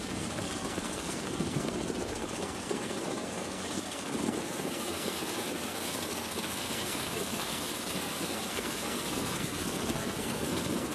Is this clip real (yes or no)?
no